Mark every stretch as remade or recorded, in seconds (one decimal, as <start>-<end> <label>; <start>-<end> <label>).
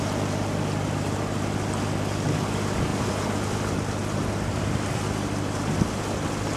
0.0-6.6 recorded